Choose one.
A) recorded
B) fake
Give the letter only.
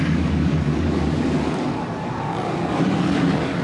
B